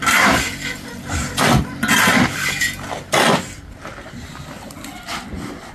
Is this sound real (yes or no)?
yes